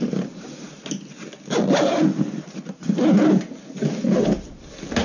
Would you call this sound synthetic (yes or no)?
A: no